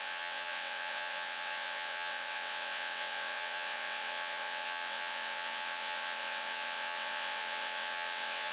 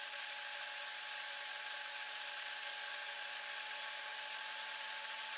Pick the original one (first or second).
second